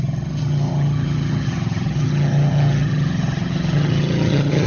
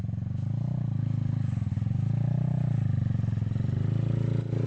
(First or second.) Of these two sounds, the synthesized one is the first